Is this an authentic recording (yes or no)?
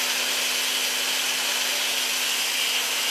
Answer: yes